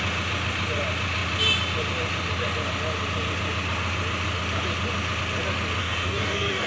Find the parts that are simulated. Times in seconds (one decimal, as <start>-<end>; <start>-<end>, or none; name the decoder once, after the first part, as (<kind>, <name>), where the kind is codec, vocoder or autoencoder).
5.8-6.7 (codec, DAC)